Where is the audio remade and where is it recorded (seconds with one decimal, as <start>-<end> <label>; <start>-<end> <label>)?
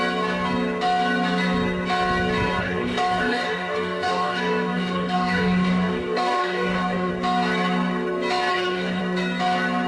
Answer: 0.0-2.6 recorded; 2.6-7.1 remade; 7.1-8.5 recorded; 8.5-9.0 remade; 9.0-9.9 recorded